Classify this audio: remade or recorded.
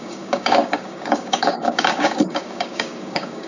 remade